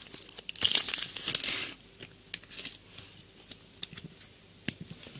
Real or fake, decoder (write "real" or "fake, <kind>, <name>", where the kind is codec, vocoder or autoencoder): real